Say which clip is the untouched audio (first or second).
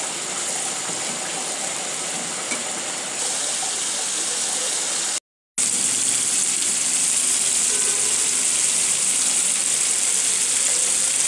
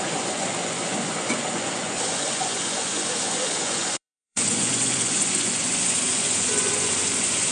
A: first